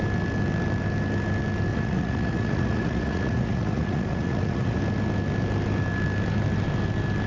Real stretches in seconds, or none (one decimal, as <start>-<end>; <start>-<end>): 0.0-1.7; 4.8-7.3